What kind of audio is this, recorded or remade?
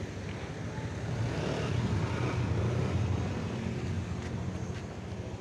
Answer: recorded